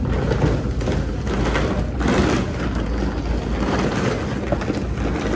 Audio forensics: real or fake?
real